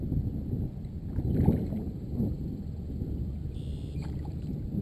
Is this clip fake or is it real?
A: real